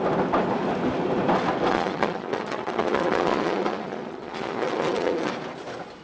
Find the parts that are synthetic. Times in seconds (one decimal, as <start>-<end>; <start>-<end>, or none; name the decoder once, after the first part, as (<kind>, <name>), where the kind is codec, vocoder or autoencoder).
1.7-5.3 (vocoder, Vocos)